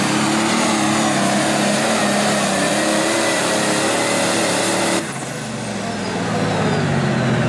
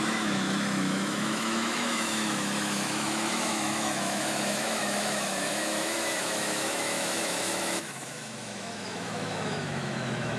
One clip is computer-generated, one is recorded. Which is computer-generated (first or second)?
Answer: second